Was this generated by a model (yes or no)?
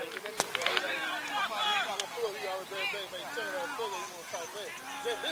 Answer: no